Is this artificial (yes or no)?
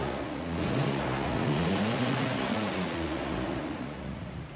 yes